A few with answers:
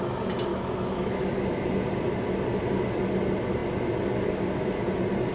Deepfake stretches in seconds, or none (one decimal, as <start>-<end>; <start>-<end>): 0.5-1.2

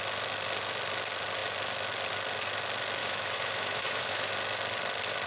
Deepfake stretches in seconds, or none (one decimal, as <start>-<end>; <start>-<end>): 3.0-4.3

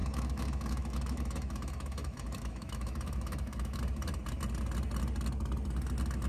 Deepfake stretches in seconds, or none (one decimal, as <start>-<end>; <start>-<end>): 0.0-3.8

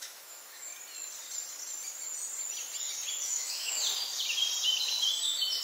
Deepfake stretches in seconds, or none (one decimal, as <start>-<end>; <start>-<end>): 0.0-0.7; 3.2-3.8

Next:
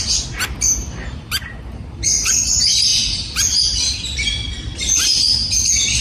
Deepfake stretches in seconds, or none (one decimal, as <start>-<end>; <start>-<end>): none

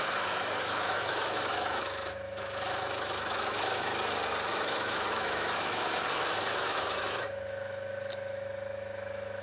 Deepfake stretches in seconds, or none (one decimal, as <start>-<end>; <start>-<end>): 0.0-3.9; 4.5-9.4

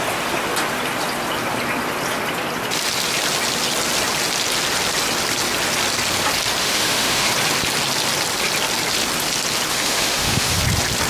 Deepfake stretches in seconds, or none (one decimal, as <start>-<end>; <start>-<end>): 6.6-7.3; 9.7-10.6